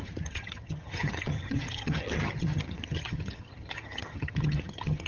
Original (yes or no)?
no